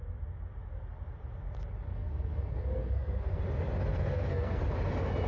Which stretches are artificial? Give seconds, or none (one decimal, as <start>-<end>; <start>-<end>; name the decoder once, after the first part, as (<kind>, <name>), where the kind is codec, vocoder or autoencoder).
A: 1.9-3.4 (codec, SNAC); 3.9-4.6